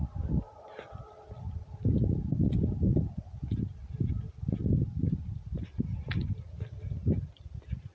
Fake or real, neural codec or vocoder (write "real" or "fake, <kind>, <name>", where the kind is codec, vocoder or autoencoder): real